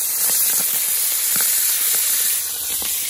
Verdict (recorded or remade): recorded